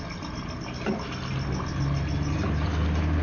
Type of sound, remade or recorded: recorded